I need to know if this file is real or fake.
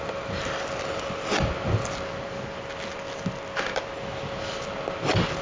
real